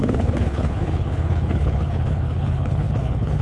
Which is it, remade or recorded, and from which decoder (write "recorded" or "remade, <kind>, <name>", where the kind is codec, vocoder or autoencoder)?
remade, codec, HILCodec